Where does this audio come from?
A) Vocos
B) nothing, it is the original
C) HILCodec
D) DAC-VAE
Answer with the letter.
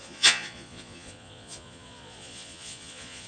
A